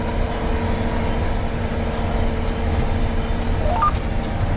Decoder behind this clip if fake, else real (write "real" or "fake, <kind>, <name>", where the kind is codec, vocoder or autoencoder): real